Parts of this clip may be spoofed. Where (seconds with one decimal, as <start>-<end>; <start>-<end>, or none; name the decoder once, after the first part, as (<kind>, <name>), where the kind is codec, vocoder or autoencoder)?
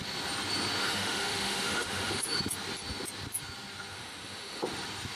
0.8-2.4 (autoencoder, DAC-VAE); 3.9-4.6